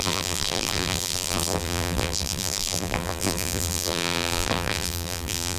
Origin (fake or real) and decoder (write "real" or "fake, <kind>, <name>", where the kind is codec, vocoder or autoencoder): fake, vocoder, BigVGAN v2